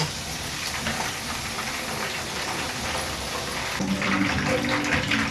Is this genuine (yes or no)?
yes